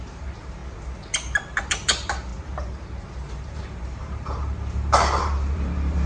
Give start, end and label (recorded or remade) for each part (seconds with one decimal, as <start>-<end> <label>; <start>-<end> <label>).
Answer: 0.0-0.6 remade; 0.6-1.7 recorded; 1.7-2.3 remade; 2.3-3.3 recorded; 3.3-6.1 remade